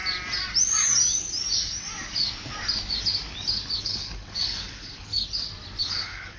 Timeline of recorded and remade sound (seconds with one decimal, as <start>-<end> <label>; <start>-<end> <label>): 0.0-3.8 recorded; 3.8-5.1 remade; 5.1-5.8 recorded; 5.8-6.4 remade